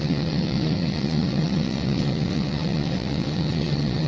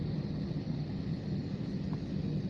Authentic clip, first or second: second